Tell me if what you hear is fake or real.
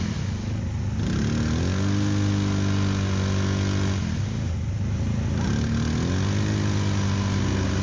real